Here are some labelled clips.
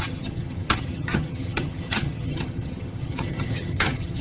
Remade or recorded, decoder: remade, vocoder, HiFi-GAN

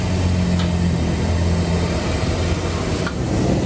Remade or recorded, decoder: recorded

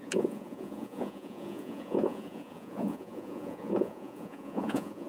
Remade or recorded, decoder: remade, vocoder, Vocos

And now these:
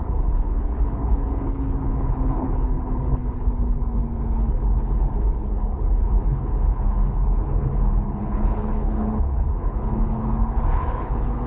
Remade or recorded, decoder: remade, codec, HILCodec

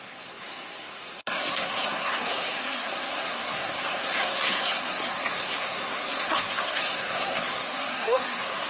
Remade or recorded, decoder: remade, codec, SNAC